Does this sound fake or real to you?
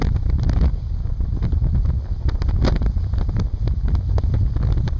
real